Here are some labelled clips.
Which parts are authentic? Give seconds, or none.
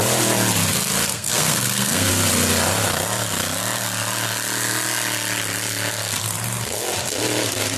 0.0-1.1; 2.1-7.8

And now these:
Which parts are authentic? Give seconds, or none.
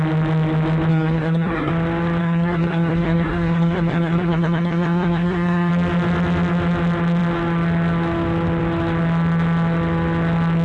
0.0-0.9; 1.7-2.2; 5.7-10.6